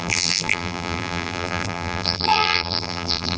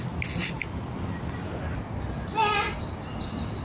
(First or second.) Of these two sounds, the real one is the second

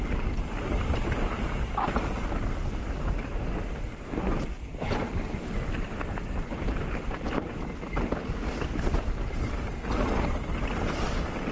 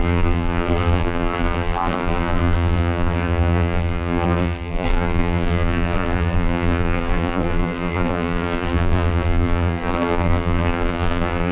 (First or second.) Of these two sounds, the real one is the first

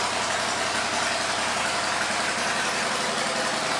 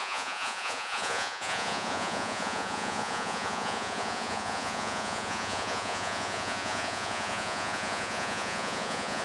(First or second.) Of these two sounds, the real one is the first